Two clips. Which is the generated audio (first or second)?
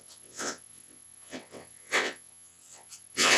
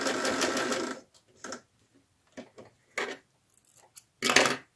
first